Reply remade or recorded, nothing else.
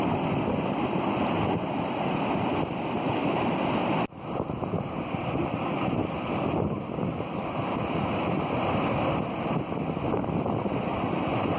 recorded